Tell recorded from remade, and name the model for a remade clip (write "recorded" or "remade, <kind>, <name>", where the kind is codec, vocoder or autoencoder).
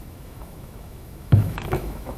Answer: remade, autoencoder, DAC-VAE